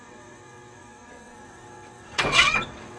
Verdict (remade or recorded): remade